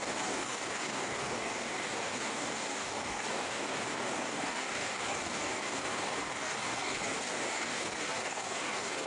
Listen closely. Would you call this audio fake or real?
fake